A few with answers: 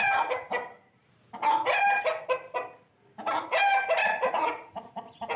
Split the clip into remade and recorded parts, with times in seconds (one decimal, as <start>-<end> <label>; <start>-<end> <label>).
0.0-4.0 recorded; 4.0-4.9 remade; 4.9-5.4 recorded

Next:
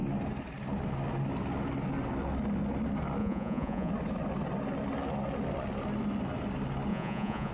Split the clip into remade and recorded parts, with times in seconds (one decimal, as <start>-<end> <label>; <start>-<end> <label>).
0.0-3.2 recorded; 3.2-3.9 remade; 3.9-6.9 recorded; 6.9-7.5 remade

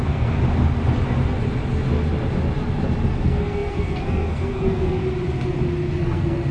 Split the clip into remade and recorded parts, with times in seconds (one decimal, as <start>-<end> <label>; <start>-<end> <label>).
0.0-0.4 remade; 0.4-3.1 recorded; 3.1-5.0 remade; 5.0-6.0 recorded; 6.0-6.5 remade

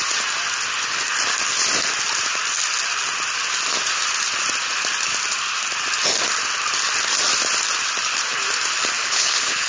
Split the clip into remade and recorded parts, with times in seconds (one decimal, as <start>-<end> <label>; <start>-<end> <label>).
0.0-9.0 recorded; 9.0-9.7 remade

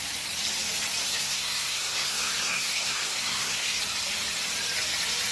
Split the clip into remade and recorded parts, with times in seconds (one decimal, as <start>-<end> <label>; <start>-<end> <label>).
0.0-1.0 recorded; 1.0-3.8 remade; 3.8-5.3 recorded